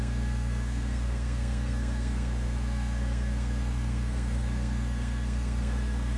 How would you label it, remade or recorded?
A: remade